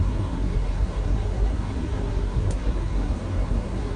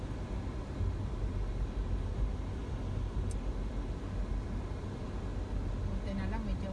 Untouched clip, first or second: second